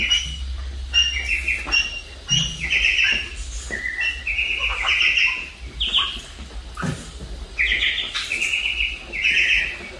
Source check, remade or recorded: recorded